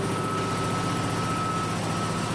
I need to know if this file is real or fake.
real